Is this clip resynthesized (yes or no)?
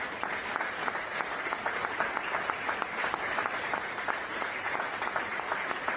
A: yes